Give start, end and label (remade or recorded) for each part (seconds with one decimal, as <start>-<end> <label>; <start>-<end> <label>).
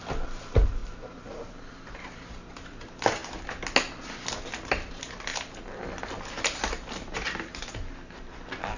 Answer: 0.0-5.3 recorded; 5.3-6.0 remade; 6.0-8.8 recorded